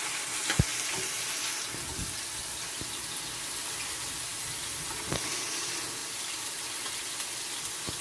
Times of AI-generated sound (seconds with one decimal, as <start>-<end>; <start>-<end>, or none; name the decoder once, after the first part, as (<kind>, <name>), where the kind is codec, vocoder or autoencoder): none

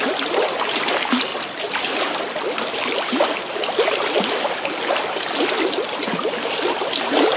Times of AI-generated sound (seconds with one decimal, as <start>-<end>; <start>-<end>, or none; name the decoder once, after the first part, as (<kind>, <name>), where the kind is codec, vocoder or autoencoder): none

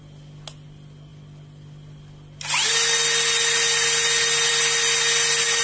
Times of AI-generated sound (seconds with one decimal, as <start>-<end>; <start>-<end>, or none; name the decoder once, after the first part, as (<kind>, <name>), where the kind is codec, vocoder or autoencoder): none

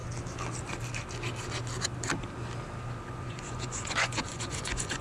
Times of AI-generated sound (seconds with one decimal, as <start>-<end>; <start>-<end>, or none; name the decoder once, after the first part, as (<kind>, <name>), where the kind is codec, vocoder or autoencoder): 3.0-5.0 (vocoder, Vocos)

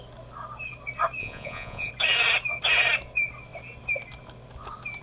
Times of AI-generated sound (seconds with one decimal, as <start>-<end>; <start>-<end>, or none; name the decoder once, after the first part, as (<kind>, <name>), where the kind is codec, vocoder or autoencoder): 1.2-1.9 (vocoder, Vocos)

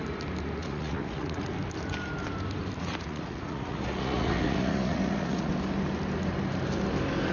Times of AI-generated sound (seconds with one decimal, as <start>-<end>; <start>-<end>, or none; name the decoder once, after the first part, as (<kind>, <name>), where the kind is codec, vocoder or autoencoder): 0.6-1.5 (vocoder, Vocos); 2.8-5.5

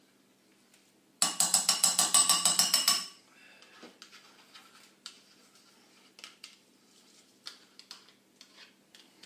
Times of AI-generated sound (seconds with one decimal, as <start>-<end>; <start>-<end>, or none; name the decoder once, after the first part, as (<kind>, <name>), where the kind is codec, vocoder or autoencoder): none